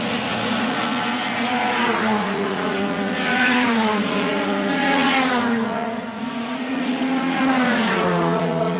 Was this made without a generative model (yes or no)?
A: no